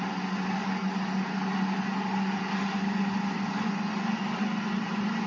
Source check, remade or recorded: recorded